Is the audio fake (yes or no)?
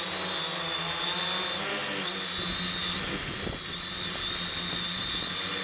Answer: no